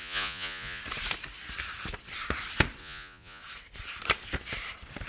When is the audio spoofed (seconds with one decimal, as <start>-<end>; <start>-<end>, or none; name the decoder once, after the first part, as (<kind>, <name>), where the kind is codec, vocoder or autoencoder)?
0.0-0.8 (vocoder, Vocos); 2.8-3.4